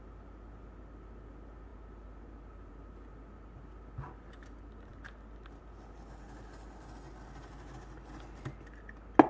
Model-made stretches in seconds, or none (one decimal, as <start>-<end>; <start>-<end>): none